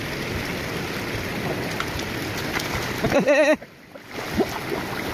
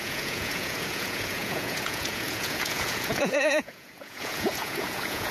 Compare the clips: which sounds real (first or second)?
first